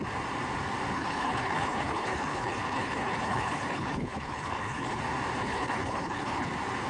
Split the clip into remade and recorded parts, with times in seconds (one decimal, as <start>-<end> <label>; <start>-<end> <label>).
0.0-0.9 recorded; 0.9-5.0 remade; 5.0-5.4 recorded; 5.4-6.5 remade; 6.5-6.9 recorded